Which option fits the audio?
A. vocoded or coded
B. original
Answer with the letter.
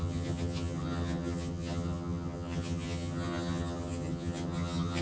A